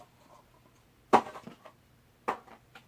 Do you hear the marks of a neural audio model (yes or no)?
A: no